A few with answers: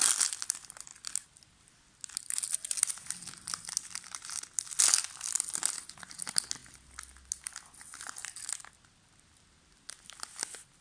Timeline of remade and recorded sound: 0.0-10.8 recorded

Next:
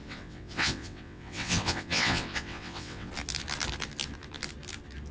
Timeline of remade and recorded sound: 0.0-3.1 remade; 3.1-5.1 recorded